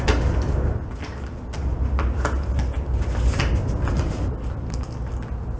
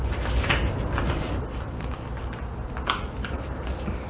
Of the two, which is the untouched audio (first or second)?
first